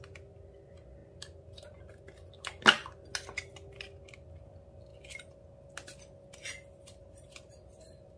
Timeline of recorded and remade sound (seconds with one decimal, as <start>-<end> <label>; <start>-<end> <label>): 0.0-7.0 recorded; 7.0-7.6 remade; 7.6-8.2 recorded

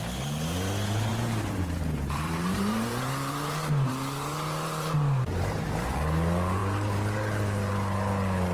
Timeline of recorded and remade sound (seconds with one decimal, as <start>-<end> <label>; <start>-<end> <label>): 0.0-1.1 recorded; 1.1-6.0 remade; 6.0-8.5 recorded

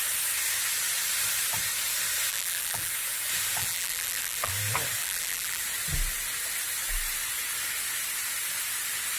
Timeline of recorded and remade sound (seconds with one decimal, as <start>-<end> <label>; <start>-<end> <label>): 0.0-2.3 recorded; 2.3-2.9 remade; 2.9-3.6 recorded; 3.6-4.5 remade; 4.5-5.0 recorded; 5.0-5.6 remade; 5.6-9.2 recorded

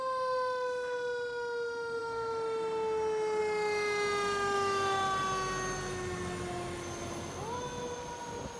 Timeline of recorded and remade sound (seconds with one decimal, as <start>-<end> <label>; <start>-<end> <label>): 0.0-8.6 recorded

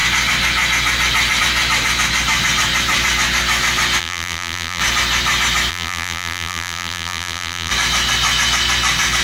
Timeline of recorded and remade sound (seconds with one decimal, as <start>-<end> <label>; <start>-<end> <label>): 0.0-4.0 recorded; 4.0-4.8 remade; 4.8-5.7 recorded; 5.7-7.7 remade; 7.7-9.2 recorded

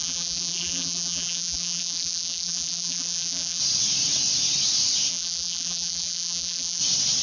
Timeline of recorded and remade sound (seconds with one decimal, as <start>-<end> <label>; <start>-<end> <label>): 0.0-3.6 remade; 3.6-5.1 recorded; 5.1-6.8 remade; 6.8-7.2 recorded

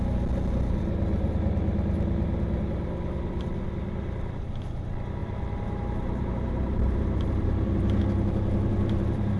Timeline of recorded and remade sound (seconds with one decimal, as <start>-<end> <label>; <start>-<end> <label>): 0.0-5.2 recorded; 5.2-8.0 remade; 8.0-8.7 recorded; 8.7-9.4 remade

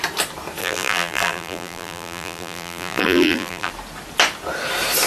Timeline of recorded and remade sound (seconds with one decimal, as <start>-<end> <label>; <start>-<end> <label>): 0.0-0.6 recorded; 0.6-3.7 remade; 3.7-5.1 recorded